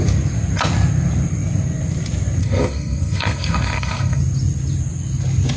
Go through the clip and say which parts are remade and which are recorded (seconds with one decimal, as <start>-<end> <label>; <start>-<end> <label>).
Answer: 0.0-2.4 recorded; 2.4-4.2 remade; 4.2-5.6 recorded